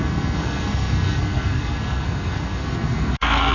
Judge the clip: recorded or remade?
remade